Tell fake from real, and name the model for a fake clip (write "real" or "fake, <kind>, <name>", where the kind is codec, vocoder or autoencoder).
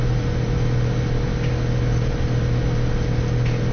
real